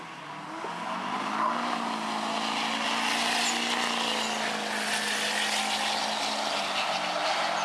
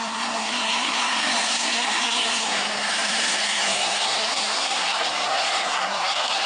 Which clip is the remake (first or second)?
second